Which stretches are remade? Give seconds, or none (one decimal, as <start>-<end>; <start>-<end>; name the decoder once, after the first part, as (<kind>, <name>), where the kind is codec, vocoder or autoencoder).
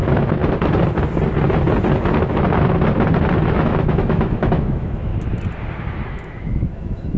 0.0-0.4 (autoencoder, DAC-VAE); 3.4-5.1; 6.1-7.2